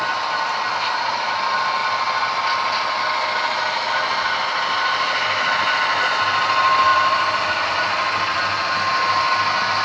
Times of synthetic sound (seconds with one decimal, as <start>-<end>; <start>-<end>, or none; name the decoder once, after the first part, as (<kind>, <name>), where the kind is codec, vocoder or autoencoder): 1.8-3.0 (vocoder, BigVGAN v2); 6.9-7.7